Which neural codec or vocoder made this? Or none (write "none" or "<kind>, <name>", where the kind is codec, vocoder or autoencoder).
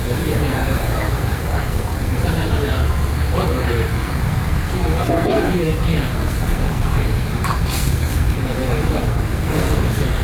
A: codec, SNAC